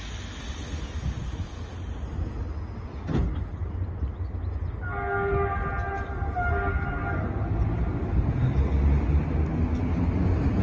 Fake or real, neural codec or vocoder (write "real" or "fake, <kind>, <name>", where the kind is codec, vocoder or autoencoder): real